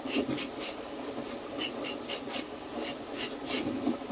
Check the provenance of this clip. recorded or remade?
recorded